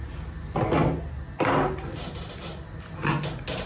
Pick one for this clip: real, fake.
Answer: real